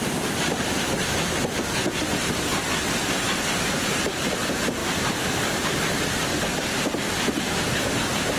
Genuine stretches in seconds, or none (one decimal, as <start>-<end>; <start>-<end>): 0.0-4.8